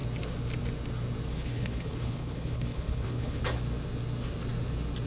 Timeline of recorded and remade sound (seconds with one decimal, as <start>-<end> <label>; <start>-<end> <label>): 0.0-1.3 recorded; 1.3-3.4 remade; 3.4-5.1 recorded